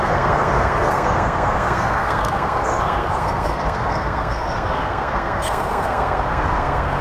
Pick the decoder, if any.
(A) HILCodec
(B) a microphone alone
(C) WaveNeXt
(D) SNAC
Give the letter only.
D